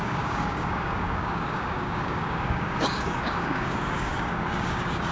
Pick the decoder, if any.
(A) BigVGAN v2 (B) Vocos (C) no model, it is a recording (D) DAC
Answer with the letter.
D